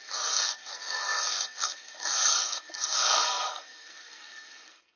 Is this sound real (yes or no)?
no